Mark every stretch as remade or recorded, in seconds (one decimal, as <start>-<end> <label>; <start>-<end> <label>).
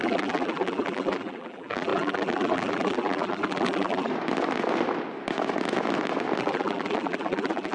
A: 0.0-4.1 remade; 4.1-6.4 recorded; 6.4-7.7 remade